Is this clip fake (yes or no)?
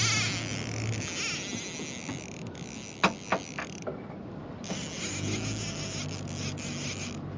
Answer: no